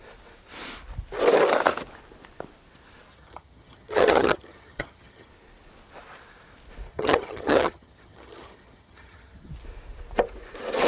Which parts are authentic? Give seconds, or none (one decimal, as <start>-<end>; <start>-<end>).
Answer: 0.0-3.1; 5.3-6.9; 9.5-10.9